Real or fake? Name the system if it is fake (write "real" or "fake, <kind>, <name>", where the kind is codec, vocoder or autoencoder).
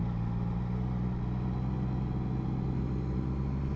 real